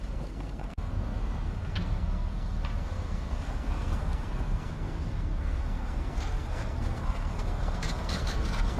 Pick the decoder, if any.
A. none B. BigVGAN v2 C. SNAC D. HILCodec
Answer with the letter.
C